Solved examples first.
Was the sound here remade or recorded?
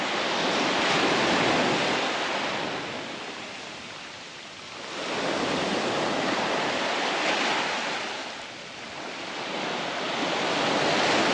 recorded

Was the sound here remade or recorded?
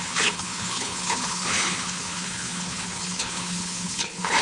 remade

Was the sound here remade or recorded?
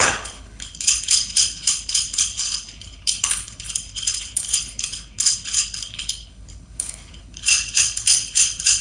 remade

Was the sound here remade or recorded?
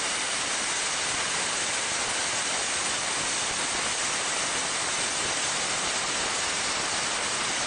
recorded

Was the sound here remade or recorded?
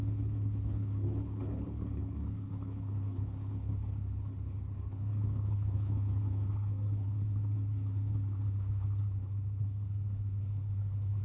remade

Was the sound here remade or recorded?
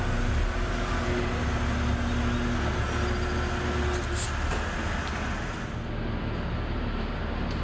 recorded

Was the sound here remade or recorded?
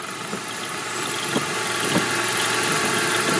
recorded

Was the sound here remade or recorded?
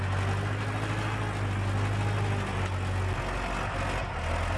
recorded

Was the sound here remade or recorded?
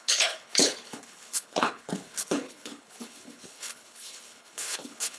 remade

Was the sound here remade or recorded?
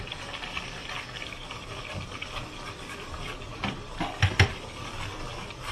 recorded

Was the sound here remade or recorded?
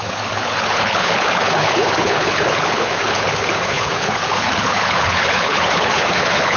remade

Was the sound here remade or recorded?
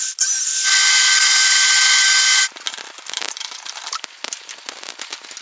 recorded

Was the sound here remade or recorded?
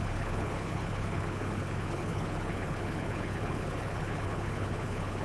remade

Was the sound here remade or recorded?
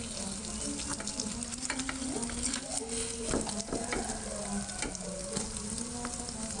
recorded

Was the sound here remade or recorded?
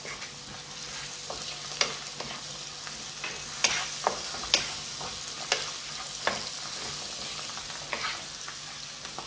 recorded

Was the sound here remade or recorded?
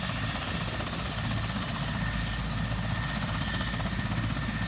recorded